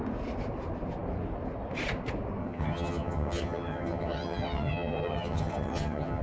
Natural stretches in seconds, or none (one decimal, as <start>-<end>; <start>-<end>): 0.0-2.4